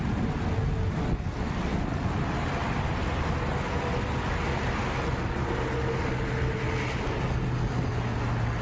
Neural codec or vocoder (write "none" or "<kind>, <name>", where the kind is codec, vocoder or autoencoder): none